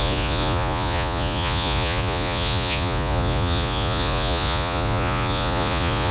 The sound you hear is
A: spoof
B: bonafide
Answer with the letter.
A